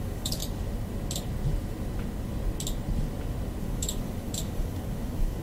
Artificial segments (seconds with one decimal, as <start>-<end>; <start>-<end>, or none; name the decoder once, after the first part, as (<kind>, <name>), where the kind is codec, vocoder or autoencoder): 0.0-0.4 (codec, DAC); 3.6-5.4